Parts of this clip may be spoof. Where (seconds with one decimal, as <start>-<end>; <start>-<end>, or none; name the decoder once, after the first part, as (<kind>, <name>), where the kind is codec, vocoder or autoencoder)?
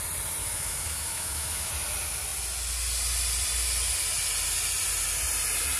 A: 0.4-1.7 (autoencoder, DAC-VAE)